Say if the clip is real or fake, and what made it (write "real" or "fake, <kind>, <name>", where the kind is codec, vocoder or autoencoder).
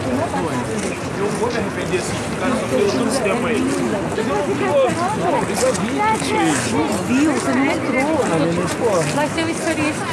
real